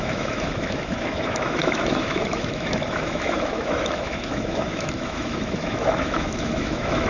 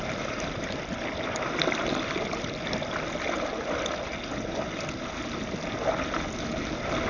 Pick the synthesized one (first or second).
first